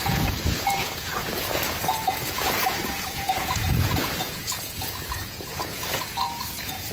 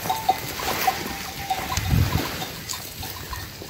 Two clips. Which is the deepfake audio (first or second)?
first